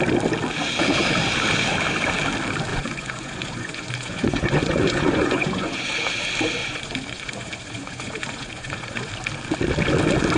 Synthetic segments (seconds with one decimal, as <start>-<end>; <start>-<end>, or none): 2.7-5.9; 6.6-9.1

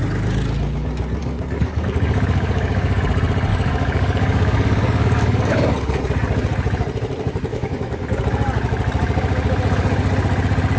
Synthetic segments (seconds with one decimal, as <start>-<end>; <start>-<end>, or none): 1.2-3.0; 3.5-6.0; 7.5-8.2

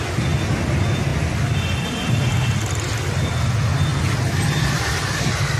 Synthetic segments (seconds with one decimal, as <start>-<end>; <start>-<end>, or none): none

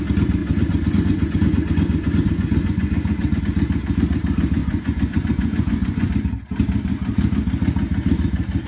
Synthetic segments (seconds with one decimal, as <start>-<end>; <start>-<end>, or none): 0.4-3.4; 4.6-6.1

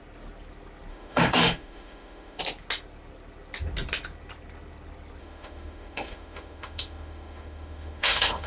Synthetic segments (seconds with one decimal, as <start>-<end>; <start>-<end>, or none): 0.9-2.4; 5.2-8.5